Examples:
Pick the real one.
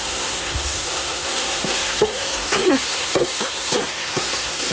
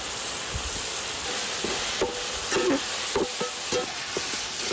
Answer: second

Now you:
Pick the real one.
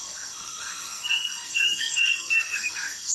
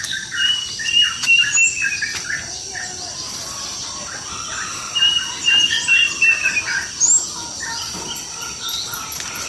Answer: second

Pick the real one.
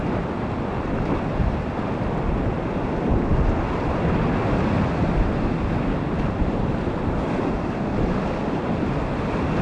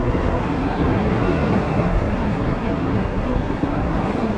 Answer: first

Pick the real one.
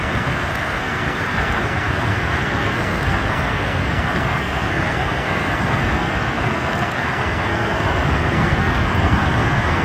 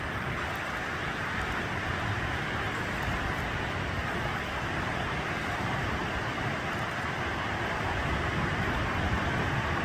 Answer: second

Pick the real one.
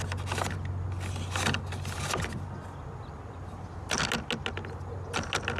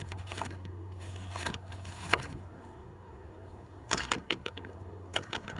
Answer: first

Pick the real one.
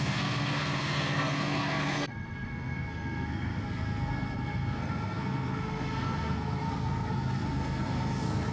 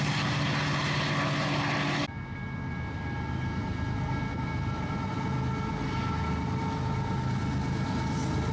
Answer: second